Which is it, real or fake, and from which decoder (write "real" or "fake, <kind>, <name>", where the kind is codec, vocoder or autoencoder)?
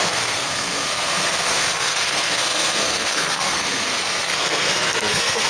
fake, codec, SNAC